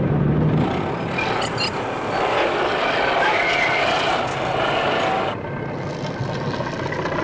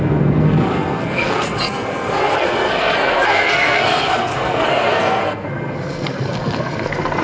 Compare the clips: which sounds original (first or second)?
first